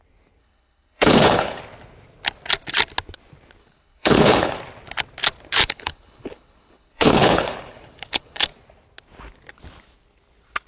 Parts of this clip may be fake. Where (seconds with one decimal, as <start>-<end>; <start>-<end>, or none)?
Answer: 0.4-1.6; 3.6-4.6; 5.6-8.5